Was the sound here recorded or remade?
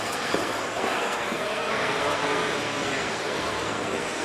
remade